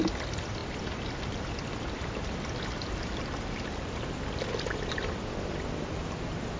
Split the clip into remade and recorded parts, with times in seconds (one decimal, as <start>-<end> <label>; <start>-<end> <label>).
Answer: 0.0-6.6 recorded